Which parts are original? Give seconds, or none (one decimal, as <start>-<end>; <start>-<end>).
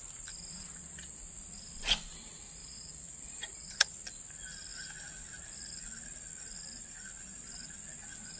0.0-0.5; 1.2-2.6; 3.9-8.4